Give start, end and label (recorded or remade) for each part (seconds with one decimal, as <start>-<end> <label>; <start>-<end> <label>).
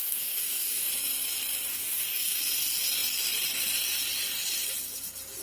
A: 0.0-0.9 remade; 0.9-1.7 recorded; 1.7-2.4 remade; 2.4-5.4 recorded